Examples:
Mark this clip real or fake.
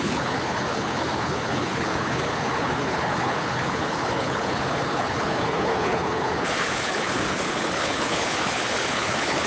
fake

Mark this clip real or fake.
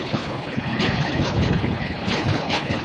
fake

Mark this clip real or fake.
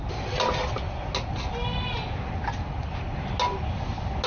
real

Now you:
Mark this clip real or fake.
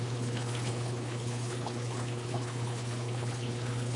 fake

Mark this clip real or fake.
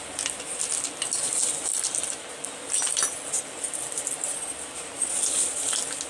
real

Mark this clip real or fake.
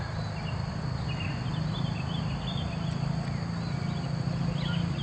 real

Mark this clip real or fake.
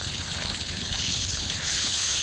fake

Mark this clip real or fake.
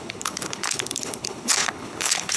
fake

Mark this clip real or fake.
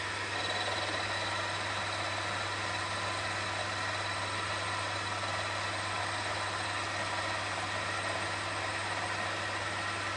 real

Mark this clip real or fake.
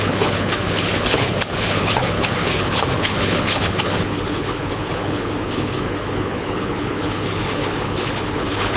fake